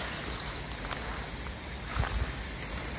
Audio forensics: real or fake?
real